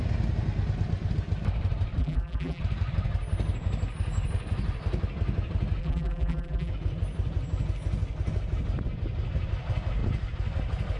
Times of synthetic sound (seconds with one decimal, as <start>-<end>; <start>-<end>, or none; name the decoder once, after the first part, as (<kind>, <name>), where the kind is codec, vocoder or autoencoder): 2.0-2.6 (vocoder, BigVGAN v2); 5.8-6.7